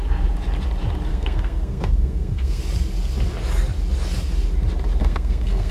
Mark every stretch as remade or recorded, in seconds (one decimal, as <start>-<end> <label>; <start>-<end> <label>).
0.0-1.1 recorded; 1.1-2.6 remade; 2.6-5.0 recorded; 5.0-5.7 remade

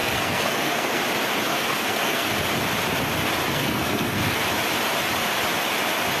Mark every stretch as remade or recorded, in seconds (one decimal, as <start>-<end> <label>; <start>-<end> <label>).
0.0-1.0 remade; 1.0-1.5 recorded; 1.5-2.3 remade; 2.3-3.5 recorded; 3.5-4.4 remade; 4.4-6.2 recorded